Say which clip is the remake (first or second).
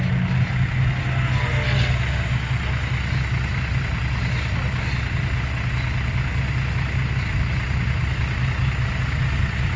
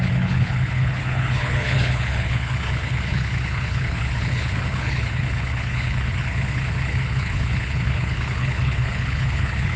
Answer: second